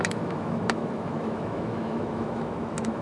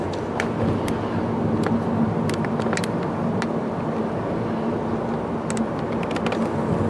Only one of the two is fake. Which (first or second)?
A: first